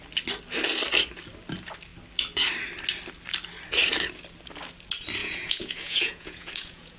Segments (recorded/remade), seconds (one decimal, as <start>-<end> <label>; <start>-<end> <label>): 0.0-5.2 recorded; 5.2-7.0 remade